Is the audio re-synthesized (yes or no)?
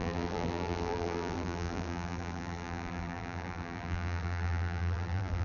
yes